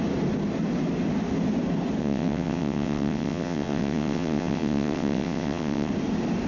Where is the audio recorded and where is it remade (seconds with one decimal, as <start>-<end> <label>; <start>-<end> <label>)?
0.0-2.0 recorded; 2.0-5.9 remade; 5.9-6.5 recorded